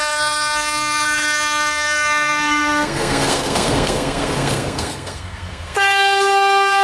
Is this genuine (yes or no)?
no